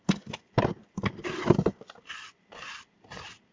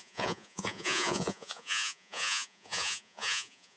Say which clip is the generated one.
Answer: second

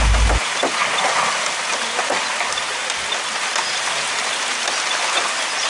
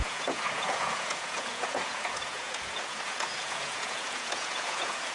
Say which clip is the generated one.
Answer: second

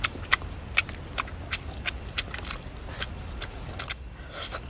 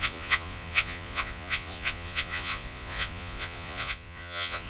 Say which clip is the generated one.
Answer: second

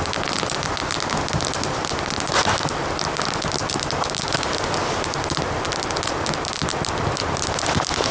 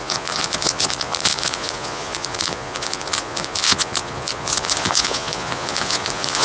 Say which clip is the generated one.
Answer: second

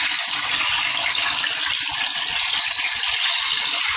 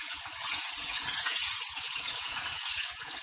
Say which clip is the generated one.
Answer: second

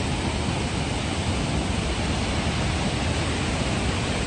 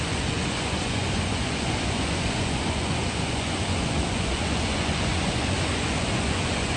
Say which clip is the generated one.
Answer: second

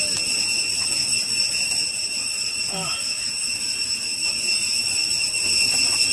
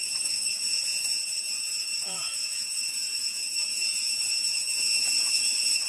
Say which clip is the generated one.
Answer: second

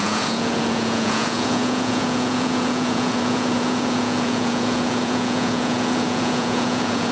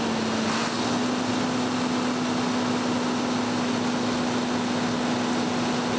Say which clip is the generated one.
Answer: first